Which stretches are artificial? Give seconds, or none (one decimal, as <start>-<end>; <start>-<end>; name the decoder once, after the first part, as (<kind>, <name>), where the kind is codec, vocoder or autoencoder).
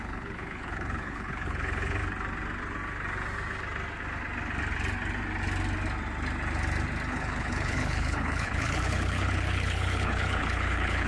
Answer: 0.0-2.0 (codec, HILCodec); 7.1-11.1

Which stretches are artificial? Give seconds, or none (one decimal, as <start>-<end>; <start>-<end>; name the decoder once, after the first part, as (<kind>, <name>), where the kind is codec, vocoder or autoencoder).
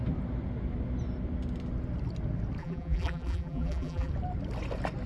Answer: 2.6-4.1 (vocoder, BigVGAN v2)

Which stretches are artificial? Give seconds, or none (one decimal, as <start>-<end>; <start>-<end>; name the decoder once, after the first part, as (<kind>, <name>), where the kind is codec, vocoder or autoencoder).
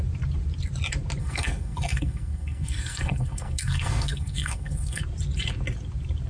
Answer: 1.2-5.0 (codec, SNAC)